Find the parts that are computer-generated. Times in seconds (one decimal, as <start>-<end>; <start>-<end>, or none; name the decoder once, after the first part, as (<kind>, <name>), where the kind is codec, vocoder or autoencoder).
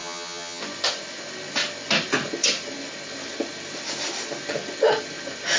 0.0-0.6 (vocoder, HiFi-GAN)